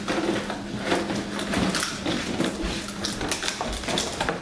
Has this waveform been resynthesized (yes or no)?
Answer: no